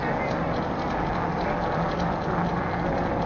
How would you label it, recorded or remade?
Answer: recorded